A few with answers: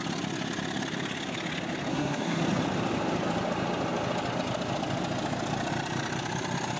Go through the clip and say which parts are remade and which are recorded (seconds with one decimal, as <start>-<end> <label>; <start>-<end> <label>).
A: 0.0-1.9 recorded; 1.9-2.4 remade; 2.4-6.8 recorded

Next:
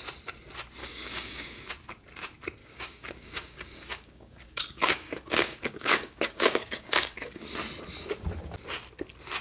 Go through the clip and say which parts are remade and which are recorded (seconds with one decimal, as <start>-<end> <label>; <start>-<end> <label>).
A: 0.0-0.8 recorded; 0.8-1.7 remade; 1.7-2.6 recorded; 2.6-7.5 remade; 7.5-9.4 recorded

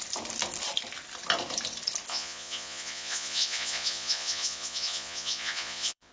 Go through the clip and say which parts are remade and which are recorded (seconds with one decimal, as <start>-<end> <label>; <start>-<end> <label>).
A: 0.0-2.1 recorded; 2.1-6.1 remade

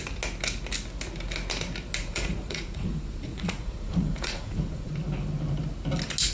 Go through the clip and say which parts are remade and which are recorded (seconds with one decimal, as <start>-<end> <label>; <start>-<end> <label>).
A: 0.0-2.0 recorded; 2.0-4.9 remade; 4.9-6.3 recorded